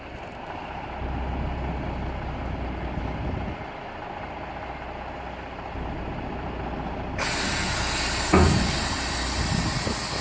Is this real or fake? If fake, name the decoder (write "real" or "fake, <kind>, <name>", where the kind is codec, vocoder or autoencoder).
real